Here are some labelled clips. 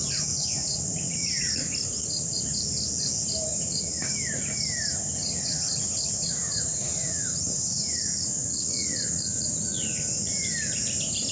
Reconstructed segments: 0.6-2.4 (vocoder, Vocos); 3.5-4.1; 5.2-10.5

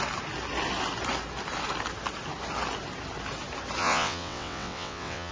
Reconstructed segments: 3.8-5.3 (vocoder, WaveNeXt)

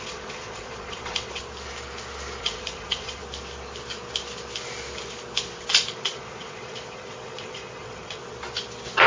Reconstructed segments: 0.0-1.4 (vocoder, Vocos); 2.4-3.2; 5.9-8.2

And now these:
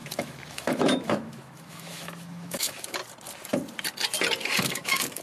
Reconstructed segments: 0.0-3.0 (autoencoder, DAC-VAE); 4.7-5.2

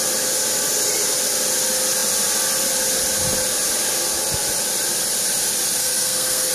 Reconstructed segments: 5.8-6.5 (codec, SNAC)